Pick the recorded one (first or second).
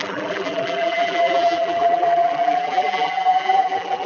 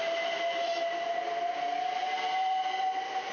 second